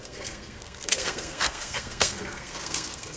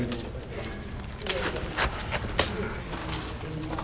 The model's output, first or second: first